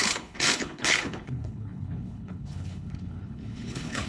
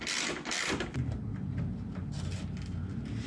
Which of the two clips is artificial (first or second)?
first